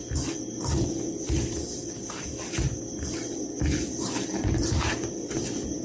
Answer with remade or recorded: recorded